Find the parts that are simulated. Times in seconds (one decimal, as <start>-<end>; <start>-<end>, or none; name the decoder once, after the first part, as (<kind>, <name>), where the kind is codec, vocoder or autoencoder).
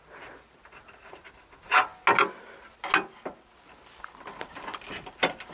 none